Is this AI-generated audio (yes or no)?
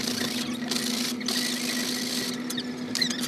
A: no